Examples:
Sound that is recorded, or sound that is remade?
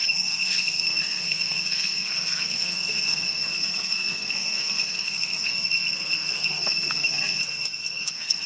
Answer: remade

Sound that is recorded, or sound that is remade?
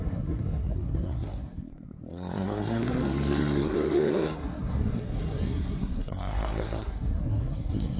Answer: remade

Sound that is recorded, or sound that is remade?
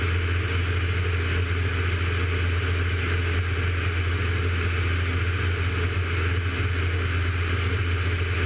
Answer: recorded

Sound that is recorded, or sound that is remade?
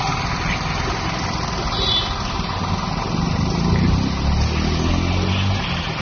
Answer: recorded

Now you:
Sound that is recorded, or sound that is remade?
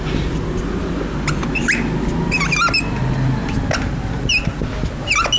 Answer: recorded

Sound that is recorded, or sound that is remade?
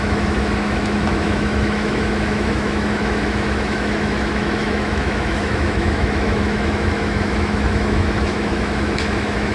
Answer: remade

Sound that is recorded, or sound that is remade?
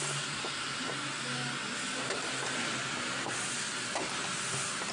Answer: recorded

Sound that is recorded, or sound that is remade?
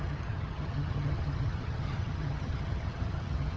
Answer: remade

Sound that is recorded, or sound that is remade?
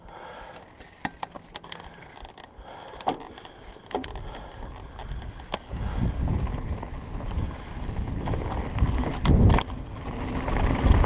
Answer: recorded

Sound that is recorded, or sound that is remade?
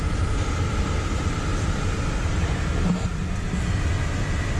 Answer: recorded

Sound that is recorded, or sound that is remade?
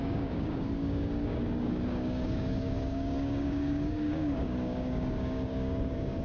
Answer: remade